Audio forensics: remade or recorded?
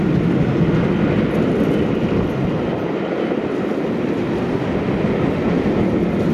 recorded